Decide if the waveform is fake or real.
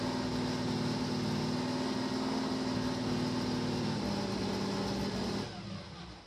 real